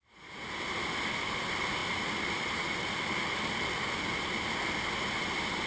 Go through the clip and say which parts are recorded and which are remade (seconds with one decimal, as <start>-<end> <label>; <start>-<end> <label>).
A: 0.0-5.7 recorded